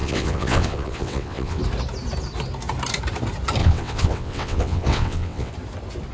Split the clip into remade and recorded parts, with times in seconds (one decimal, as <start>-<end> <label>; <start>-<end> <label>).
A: 0.0-1.6 remade; 1.6-3.6 recorded; 3.6-5.5 remade; 5.5-6.1 recorded